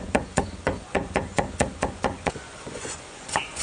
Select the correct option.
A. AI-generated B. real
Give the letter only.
A